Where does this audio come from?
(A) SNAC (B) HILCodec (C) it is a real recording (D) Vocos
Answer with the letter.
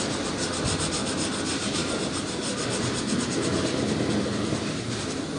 C